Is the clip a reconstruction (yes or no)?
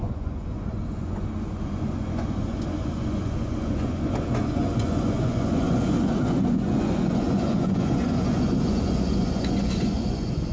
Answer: yes